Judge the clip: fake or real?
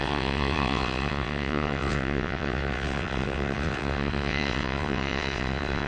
fake